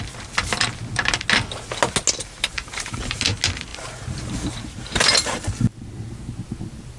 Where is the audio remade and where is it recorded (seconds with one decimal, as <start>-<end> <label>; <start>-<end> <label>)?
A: 0.0-2.2 recorded; 2.2-3.2 remade; 3.2-3.7 recorded; 3.7-5.4 remade; 5.4-7.0 recorded